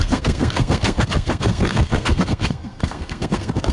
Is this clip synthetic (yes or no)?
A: yes